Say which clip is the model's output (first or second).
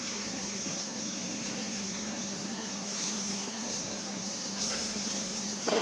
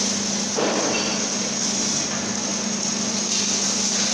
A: first